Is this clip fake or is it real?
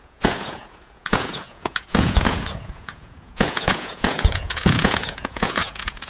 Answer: fake